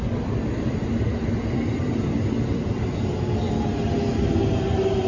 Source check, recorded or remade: recorded